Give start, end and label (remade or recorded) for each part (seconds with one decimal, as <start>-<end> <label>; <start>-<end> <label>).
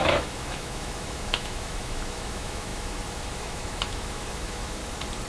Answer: 0.0-4.8 remade; 4.8-5.3 recorded